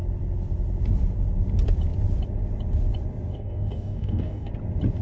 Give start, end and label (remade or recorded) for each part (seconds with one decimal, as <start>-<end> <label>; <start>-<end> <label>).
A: 0.0-3.3 recorded; 3.3-4.5 remade; 4.5-5.0 recorded